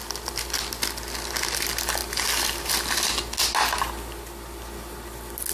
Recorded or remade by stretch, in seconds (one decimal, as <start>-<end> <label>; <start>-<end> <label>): 0.0-5.5 recorded